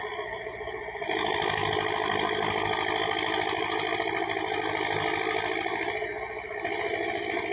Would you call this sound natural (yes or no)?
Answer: yes